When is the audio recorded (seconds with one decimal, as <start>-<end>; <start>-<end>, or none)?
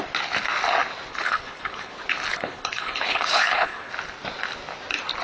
0.0-1.1; 1.9-2.3; 3.9-5.2